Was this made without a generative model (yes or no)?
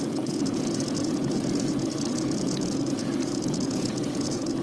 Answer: no